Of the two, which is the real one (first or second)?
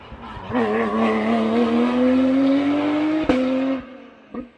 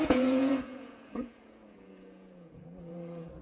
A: first